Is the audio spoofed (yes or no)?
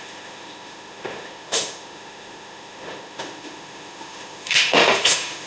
yes